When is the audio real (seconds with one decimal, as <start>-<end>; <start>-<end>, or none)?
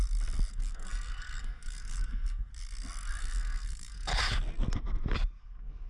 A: 0.0-0.5; 2.5-3.2; 4.1-5.4